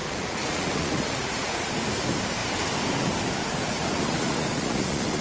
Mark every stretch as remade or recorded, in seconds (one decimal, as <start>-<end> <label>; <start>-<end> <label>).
0.0-1.7 remade; 1.7-3.5 recorded; 3.5-5.2 remade